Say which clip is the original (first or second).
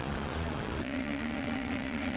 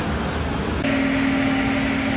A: second